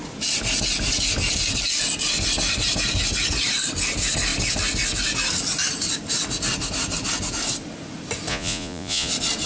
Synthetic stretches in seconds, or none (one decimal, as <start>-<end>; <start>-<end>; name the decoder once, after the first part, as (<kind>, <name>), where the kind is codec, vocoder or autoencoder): 8.3-9.1 (vocoder, Vocos)